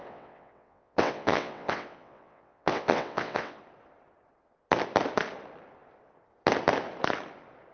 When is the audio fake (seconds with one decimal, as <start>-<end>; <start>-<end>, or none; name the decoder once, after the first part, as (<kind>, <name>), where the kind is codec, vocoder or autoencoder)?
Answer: 0.0-3.6 (vocoder, WaveNeXt)